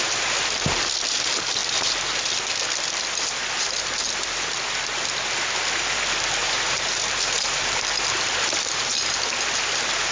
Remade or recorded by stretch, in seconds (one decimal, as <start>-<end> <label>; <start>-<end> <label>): 0.0-6.4 recorded; 6.4-7.8 remade; 7.8-10.1 recorded